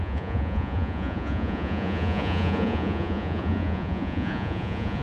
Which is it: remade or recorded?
remade